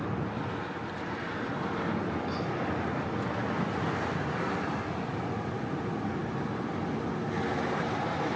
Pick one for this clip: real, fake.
real